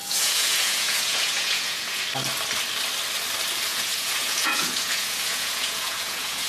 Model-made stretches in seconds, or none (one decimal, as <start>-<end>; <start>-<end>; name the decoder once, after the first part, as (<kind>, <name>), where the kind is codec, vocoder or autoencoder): 0.0-2.0 (vocoder, Vocos); 3.7-6.5